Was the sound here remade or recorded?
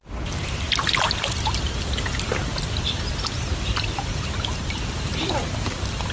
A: recorded